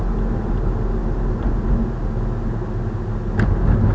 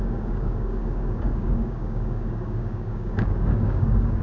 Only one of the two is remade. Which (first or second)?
second